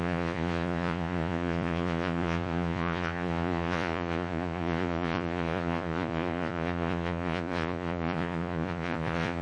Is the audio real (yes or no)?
no